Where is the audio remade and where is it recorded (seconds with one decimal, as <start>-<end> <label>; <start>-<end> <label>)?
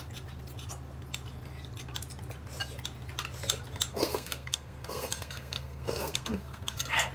0.0-3.9 recorded; 3.9-7.1 remade